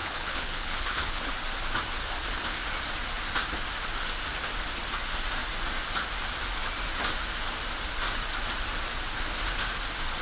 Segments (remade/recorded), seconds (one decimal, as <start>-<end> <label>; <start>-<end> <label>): 0.0-1.3 remade; 1.3-10.2 recorded